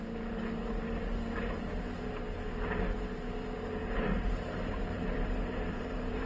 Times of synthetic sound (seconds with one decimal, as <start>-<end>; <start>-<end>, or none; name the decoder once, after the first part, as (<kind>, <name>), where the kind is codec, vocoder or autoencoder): 3.8-6.3 (vocoder, BigVGAN v2)